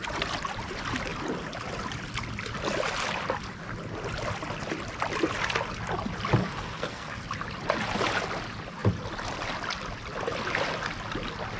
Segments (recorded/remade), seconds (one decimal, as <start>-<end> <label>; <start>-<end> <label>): 0.0-6.4 recorded; 6.4-7.2 remade; 7.2-11.6 recorded